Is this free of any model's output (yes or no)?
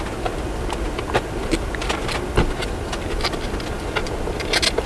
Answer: yes